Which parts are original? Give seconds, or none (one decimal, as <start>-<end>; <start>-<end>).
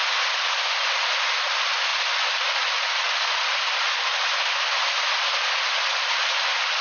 0.0-6.8